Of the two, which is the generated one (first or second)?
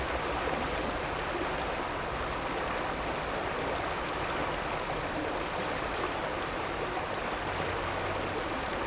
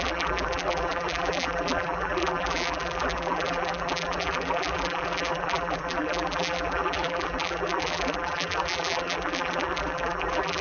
second